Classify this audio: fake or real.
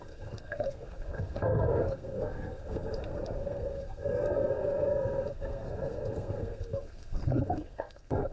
fake